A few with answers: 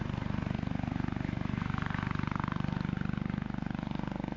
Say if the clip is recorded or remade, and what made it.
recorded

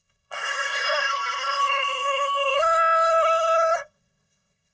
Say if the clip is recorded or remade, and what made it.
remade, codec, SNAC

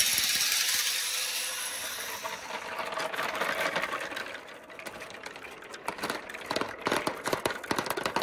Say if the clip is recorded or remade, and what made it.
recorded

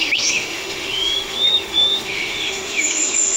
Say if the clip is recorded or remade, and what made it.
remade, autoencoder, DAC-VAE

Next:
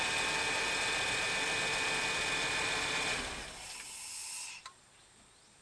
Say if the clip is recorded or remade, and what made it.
recorded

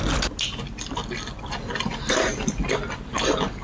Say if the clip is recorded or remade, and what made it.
recorded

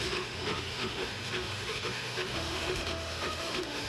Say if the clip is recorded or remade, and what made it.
remade, autoencoder, DAC-VAE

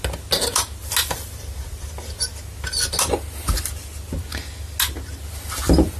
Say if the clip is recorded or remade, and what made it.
recorded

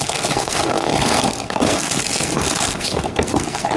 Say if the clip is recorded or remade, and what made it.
remade, codec, SNAC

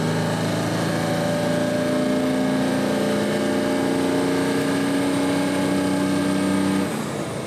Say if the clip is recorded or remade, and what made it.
recorded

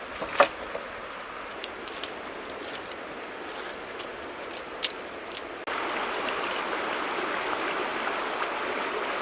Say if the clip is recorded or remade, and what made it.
recorded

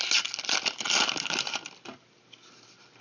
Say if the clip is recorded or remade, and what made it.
recorded